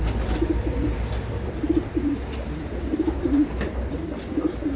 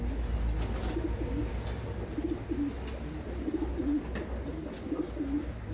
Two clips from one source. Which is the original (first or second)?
second